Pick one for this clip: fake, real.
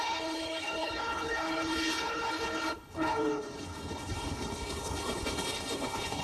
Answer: fake